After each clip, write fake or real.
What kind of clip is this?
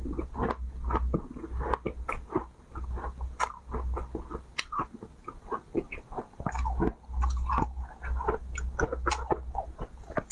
real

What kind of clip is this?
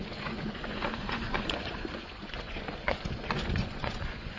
fake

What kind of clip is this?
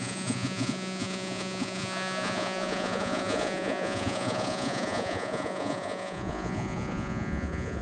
fake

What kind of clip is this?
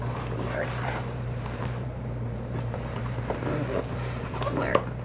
fake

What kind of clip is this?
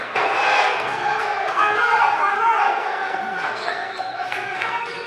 fake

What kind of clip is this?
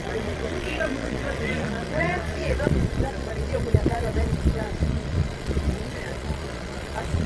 fake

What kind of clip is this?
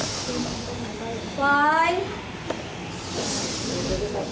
real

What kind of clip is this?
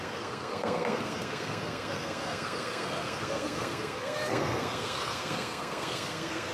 fake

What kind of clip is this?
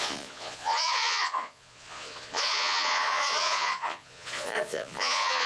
fake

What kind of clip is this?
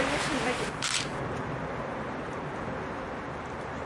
real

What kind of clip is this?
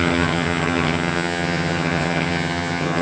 fake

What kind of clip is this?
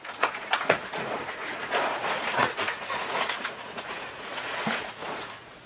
fake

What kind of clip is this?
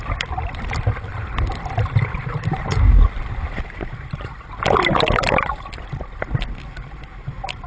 real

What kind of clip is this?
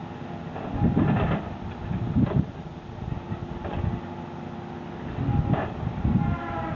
real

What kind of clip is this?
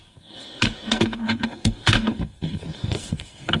fake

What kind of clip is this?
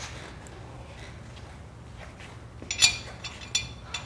real